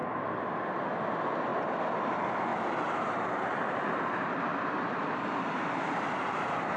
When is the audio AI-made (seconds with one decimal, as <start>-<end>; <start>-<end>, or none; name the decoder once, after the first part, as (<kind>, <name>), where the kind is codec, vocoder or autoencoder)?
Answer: 1.5-2.0 (vocoder, BigVGAN v2); 2.5-4.0; 4.5-5.1